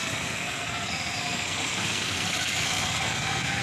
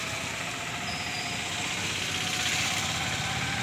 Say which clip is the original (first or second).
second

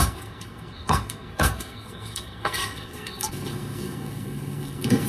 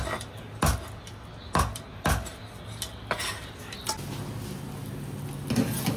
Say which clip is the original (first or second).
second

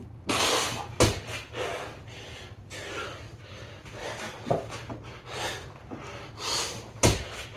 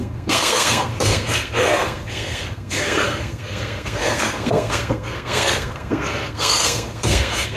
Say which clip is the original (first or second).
first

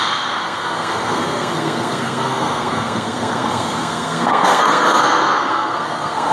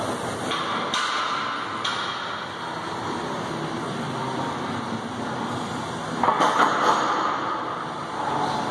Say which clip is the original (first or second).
second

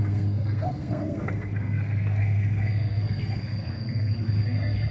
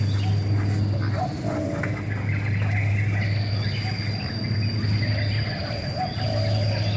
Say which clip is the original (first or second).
second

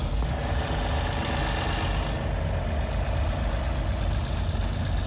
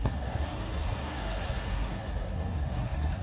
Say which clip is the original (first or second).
first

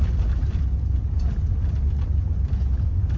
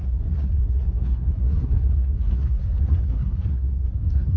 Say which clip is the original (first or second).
first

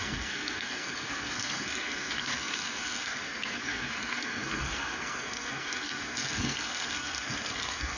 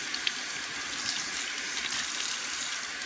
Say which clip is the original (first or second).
second